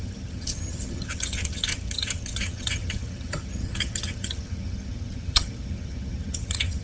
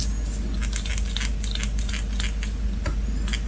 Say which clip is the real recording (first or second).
second